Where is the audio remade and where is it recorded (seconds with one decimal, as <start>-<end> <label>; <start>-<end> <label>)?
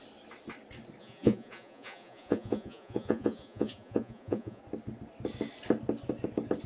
0.0-1.0 recorded; 1.0-4.6 remade; 4.6-6.7 recorded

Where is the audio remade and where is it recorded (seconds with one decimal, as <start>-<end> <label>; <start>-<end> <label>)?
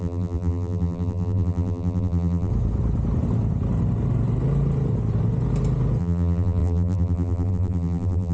0.0-2.5 remade; 2.5-6.0 recorded; 6.0-8.3 remade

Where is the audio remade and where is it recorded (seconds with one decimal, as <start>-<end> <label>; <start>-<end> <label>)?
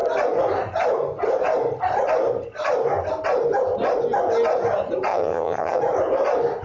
0.0-5.1 recorded; 5.1-5.8 remade; 5.8-6.6 recorded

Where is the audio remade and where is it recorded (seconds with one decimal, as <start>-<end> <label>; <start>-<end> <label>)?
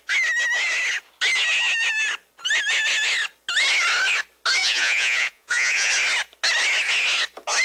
0.0-4.6 recorded; 4.6-5.9 remade; 5.9-7.6 recorded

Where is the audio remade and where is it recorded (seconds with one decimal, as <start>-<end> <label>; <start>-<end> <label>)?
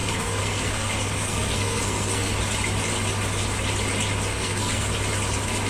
0.0-2.3 remade; 2.3-4.3 recorded; 4.3-4.9 remade; 4.9-5.7 recorded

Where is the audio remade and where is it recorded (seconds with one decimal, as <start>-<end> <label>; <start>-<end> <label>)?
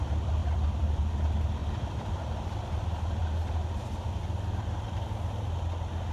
0.0-0.4 recorded; 0.4-1.1 remade; 1.1-1.6 recorded; 1.6-2.6 remade; 2.6-6.1 recorded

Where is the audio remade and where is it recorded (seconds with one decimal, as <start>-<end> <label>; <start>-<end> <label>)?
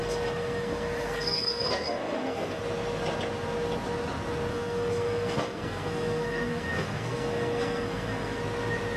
0.0-2.6 remade; 2.6-4.5 recorded; 4.5-8.4 remade; 8.4-9.0 recorded